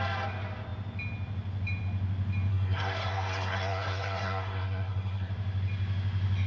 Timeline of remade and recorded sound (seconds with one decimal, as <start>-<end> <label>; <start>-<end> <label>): 0.0-2.5 recorded; 2.5-5.3 remade; 5.3-6.5 recorded